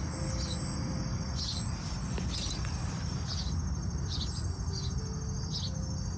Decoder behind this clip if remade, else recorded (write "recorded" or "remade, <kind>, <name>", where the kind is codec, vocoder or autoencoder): recorded